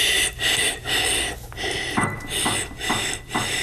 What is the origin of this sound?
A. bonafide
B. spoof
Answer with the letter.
A